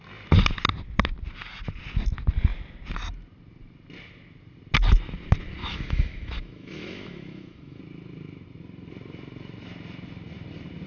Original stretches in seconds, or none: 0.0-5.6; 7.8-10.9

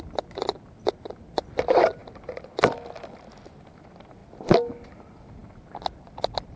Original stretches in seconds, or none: 0.0-6.6

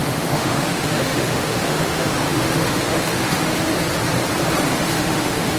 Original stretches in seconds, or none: 3.7-4.7